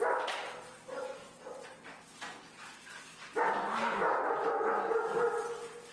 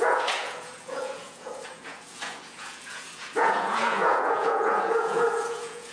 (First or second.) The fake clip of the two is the second